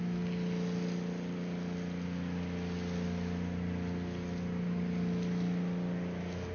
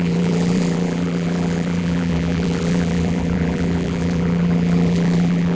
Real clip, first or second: first